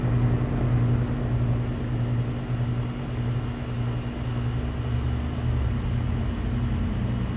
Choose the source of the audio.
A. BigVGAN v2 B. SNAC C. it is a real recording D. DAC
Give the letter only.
C